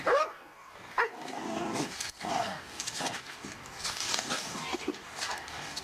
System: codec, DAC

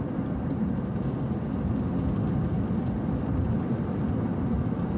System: none